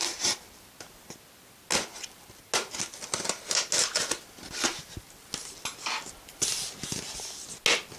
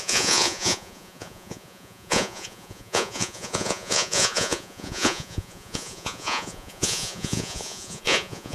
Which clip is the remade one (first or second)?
second